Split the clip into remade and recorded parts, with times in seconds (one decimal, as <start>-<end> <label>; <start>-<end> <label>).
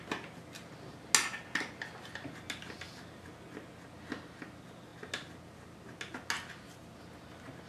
0.0-7.7 recorded